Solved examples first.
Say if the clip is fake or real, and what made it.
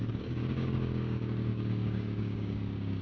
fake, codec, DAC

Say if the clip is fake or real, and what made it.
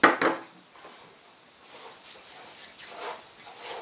real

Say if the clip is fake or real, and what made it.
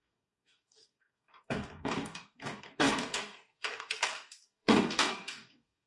fake, codec, DAC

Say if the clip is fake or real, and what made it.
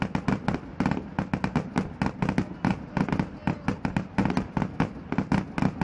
real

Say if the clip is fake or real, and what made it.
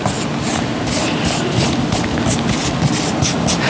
real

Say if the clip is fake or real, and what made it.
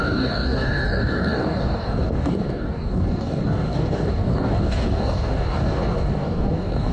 fake, codec, DAC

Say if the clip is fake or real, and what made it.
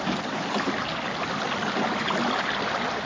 real